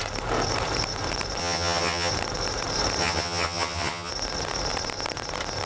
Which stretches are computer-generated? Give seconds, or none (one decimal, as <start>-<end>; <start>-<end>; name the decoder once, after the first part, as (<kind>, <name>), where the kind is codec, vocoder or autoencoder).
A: 1.4-2.1 (vocoder, HiFi-GAN); 3.0-4.1